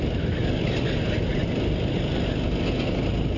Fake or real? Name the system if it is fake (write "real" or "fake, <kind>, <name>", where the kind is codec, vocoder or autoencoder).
real